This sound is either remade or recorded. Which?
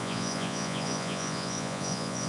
remade